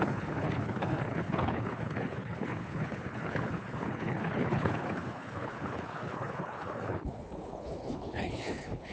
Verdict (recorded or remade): remade